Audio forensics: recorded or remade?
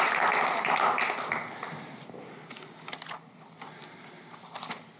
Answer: recorded